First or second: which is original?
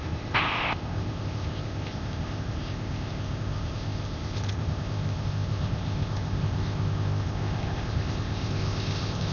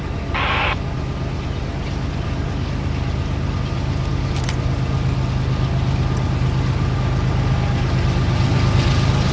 second